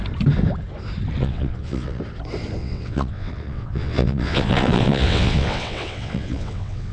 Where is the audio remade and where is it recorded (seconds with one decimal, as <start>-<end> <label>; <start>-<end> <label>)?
0.0-1.2 recorded; 1.2-2.0 remade; 2.0-2.6 recorded; 2.6-6.9 remade